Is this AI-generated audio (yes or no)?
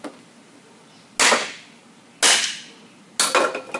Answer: no